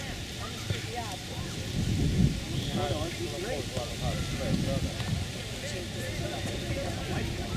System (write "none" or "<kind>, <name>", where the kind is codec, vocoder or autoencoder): none